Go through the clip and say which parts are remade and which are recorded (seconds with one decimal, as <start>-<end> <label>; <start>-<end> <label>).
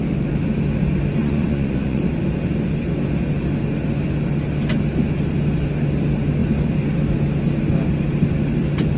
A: 0.0-1.2 recorded; 1.2-2.1 remade; 2.1-9.0 recorded